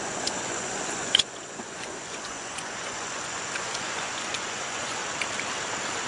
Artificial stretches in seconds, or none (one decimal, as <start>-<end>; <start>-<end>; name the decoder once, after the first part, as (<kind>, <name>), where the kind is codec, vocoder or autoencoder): 0.0-5.0 (vocoder, Vocos)